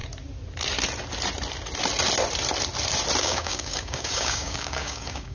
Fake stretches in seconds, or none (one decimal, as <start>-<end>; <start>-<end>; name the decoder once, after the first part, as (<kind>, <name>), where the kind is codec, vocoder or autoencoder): 3.2-5.3 (codec, DAC)